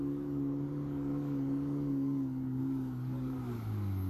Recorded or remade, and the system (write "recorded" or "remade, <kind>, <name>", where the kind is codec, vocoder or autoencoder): remade, codec, DAC